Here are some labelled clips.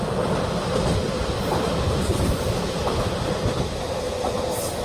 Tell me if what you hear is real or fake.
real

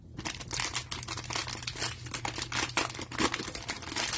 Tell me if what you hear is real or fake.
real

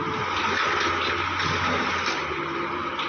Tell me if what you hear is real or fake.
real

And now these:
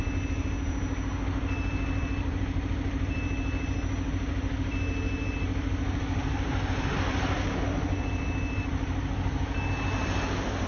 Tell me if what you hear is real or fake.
real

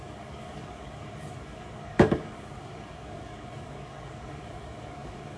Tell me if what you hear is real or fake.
fake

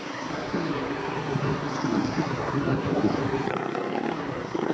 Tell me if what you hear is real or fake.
fake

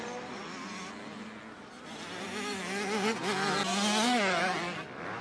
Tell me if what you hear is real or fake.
real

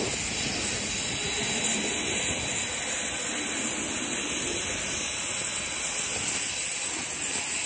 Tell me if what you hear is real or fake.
real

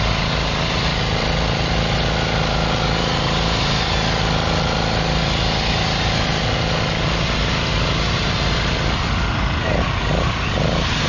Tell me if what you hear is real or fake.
real